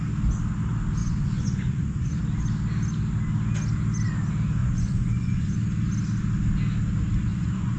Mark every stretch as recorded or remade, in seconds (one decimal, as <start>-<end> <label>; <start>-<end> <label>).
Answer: 0.0-1.0 recorded; 1.0-2.2 remade; 2.2-4.6 recorded; 4.6-5.5 remade; 5.5-7.3 recorded; 7.3-7.8 remade